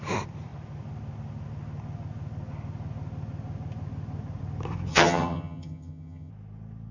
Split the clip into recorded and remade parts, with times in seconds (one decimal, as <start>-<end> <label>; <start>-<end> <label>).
0.0-4.9 recorded; 4.9-6.3 remade; 6.3-6.9 recorded